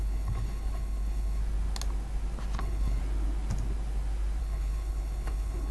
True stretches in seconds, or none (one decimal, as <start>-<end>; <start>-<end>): 1.4-2.6; 3.0-4.4